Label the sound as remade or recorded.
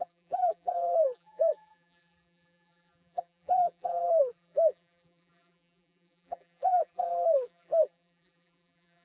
remade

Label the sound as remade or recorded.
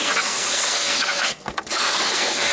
remade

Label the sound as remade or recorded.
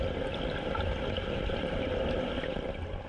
recorded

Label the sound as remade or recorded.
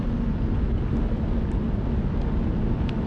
recorded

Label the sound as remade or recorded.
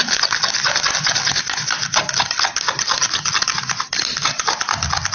recorded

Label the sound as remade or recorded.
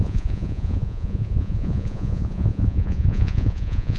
remade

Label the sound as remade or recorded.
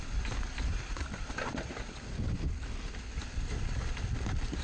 recorded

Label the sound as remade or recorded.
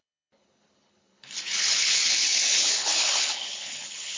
remade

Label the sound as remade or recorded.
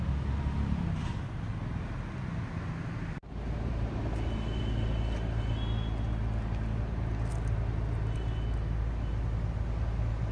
recorded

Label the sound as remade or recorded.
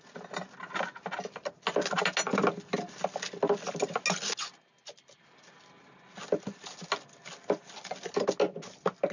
recorded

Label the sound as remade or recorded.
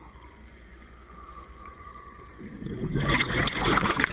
remade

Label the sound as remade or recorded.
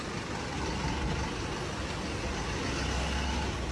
recorded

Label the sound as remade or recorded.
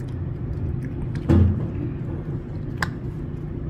recorded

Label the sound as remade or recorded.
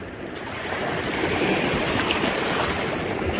recorded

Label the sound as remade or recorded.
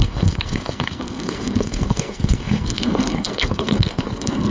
remade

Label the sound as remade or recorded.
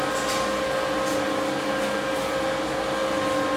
recorded